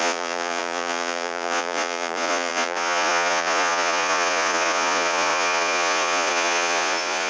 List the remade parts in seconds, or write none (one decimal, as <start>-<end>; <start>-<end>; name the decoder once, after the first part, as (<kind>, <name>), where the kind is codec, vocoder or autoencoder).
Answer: 0.0-7.3 (vocoder, Vocos)